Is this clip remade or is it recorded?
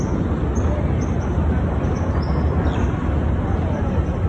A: recorded